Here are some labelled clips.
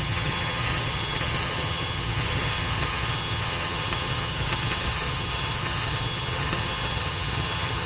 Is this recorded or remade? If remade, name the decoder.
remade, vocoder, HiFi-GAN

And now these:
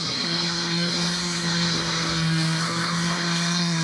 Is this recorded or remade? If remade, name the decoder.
remade, codec, SNAC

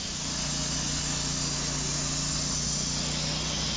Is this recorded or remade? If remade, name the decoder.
recorded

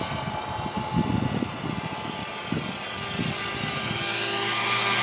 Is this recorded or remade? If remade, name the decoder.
recorded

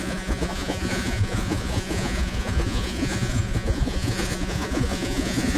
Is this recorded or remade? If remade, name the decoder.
remade, vocoder, Vocos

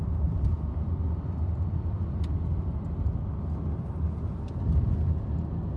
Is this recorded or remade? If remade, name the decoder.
recorded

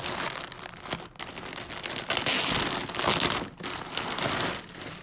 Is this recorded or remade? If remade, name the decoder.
recorded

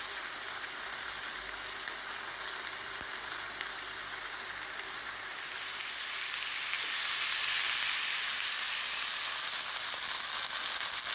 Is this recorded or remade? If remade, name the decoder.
recorded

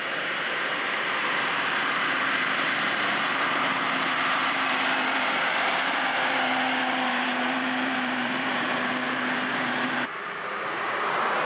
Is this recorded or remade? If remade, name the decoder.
remade, vocoder, BigVGAN v2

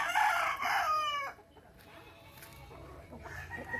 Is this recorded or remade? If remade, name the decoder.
remade, vocoder, BigVGAN v2